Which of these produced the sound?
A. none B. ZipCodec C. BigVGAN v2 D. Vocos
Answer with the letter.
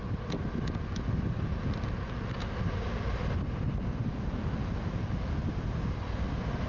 A